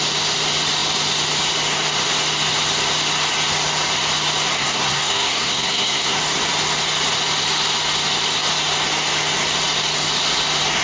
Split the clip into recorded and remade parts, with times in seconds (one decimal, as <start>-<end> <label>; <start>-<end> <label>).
0.0-4.5 recorded; 4.5-6.2 remade; 6.2-10.8 recorded